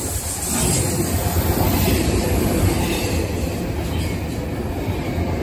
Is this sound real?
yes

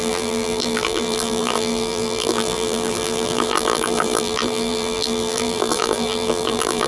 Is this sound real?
no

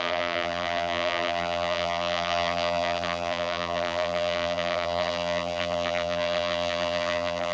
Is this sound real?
no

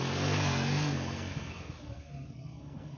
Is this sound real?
no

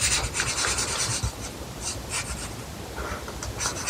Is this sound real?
no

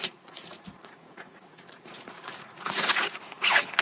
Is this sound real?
no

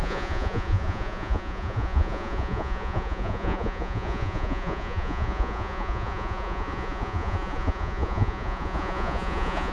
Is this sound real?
no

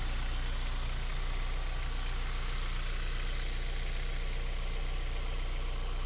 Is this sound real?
yes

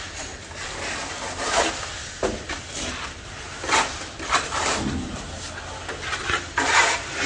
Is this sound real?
yes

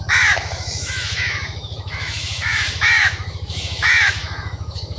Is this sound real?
no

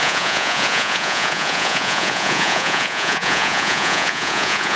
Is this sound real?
no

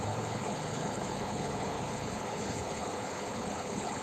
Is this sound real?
no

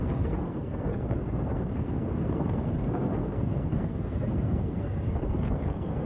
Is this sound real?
no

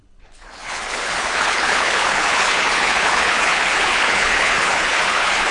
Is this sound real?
no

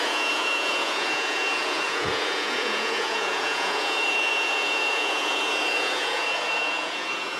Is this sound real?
no